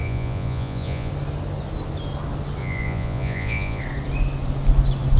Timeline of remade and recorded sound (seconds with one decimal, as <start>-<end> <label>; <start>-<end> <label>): 0.0-1.1 remade; 1.1-2.6 recorded; 2.6-3.8 remade; 3.8-5.2 recorded

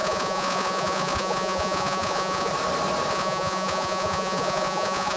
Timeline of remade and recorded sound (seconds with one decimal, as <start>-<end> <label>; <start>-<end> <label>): 0.0-2.5 remade; 2.5-3.1 recorded; 3.1-5.2 remade

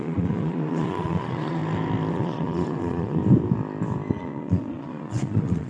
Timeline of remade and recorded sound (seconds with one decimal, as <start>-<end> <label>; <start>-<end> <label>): 0.0-1.6 remade; 1.6-2.1 recorded; 2.1-3.2 remade; 3.2-4.1 recorded; 4.1-5.7 remade